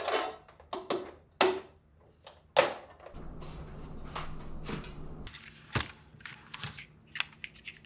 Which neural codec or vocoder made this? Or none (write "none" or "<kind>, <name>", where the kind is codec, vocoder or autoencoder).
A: none